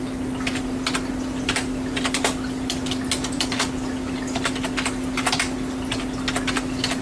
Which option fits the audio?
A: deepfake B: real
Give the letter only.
B